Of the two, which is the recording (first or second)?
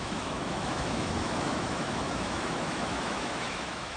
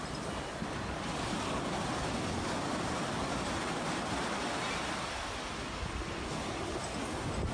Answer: second